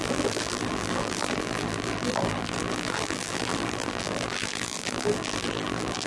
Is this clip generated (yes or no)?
yes